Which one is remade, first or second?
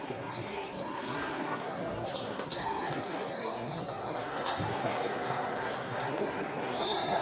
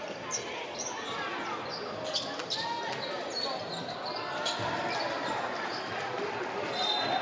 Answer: first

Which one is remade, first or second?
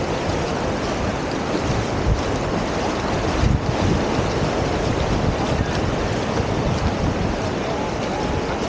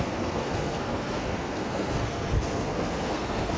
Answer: second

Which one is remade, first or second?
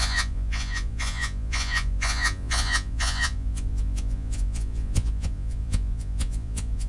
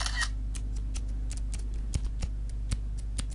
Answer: first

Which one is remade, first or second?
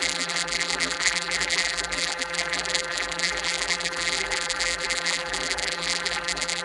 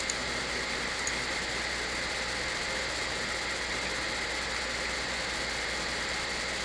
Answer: first